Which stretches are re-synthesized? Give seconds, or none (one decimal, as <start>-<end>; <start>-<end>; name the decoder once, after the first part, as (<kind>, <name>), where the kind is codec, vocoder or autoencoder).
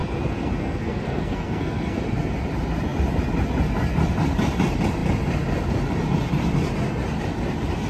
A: 0.0-2.0 (codec, SNAC)